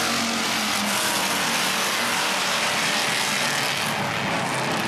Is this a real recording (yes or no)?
yes